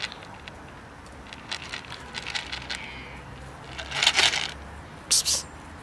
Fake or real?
real